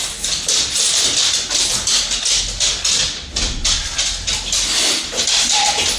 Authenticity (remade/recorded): recorded